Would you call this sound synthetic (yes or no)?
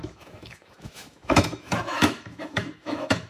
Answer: yes